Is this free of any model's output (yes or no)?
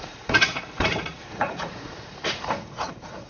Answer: no